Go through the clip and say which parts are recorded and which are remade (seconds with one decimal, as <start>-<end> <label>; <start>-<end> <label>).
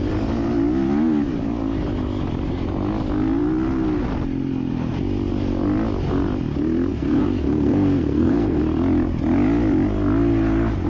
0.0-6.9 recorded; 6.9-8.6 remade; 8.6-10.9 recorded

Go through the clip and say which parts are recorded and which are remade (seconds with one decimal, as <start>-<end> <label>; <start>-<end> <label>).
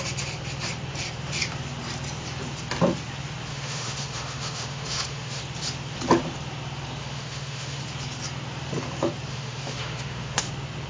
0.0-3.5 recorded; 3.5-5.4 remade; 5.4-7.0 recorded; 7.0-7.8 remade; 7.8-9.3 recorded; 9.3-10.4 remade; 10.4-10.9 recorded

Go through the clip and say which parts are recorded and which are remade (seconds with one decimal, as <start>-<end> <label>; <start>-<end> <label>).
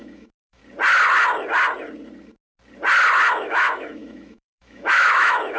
0.0-0.6 remade; 0.6-3.3 recorded; 3.3-5.6 remade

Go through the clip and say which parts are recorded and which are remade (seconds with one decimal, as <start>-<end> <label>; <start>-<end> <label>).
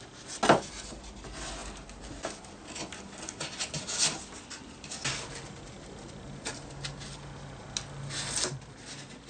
0.0-9.3 recorded